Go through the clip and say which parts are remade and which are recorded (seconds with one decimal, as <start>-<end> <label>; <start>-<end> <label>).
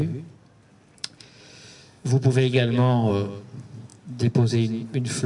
0.0-1.8 recorded; 1.8-3.1 remade; 3.1-5.3 recorded